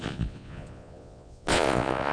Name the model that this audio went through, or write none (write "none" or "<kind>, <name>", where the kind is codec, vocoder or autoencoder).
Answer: vocoder, Vocos